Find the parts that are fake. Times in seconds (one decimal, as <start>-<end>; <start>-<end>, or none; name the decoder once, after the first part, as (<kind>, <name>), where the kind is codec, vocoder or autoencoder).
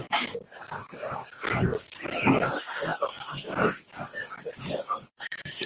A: 0.0-5.7 (codec, DAC)